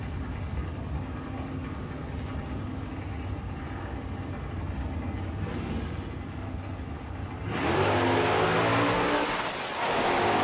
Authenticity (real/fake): real